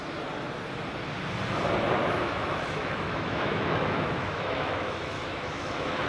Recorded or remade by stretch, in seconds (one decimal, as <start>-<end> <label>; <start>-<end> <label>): 0.0-2.0 recorded; 2.0-6.1 remade